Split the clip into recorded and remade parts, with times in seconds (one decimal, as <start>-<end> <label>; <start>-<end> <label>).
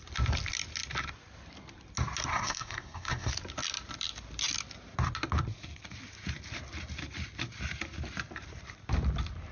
0.0-2.3 recorded; 2.3-3.3 remade; 3.3-9.5 recorded